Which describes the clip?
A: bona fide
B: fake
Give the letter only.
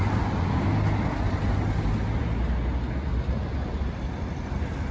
A